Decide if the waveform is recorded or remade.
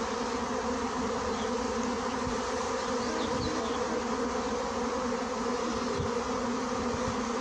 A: recorded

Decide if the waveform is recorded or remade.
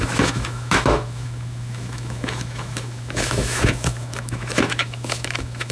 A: remade